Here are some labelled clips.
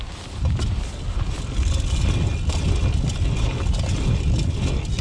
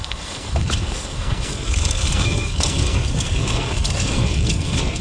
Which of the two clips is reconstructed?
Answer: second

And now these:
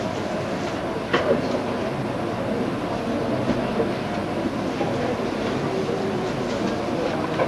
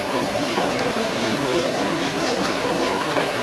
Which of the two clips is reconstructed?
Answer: second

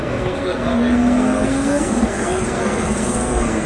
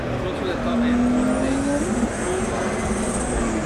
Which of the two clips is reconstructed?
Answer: first